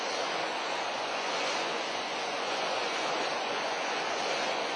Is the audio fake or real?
fake